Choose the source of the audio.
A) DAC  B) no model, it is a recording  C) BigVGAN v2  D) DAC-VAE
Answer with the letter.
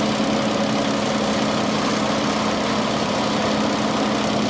B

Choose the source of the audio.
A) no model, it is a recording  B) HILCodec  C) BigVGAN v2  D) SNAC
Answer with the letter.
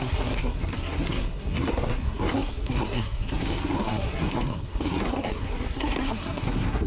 D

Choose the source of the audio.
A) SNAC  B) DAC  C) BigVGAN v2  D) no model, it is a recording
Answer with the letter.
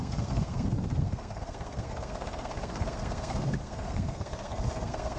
A